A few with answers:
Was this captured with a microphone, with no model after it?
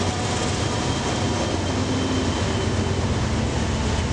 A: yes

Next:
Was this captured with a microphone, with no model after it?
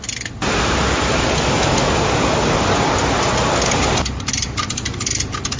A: yes